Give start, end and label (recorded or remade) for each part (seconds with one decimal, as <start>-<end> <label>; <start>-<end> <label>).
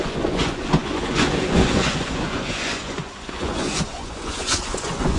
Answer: 0.0-5.2 remade